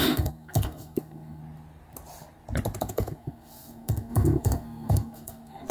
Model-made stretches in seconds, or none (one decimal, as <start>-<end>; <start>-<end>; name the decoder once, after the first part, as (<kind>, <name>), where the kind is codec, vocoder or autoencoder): 0.0-1.4 (codec, SNAC); 2.8-5.7

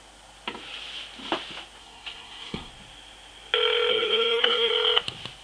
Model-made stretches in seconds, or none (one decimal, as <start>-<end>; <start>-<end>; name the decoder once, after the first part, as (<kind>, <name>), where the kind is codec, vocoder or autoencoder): 1.8-2.7 (codec, SNAC); 3.9-4.7